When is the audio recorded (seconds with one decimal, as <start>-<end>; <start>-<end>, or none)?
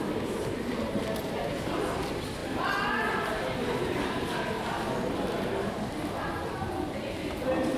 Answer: 2.4-6.5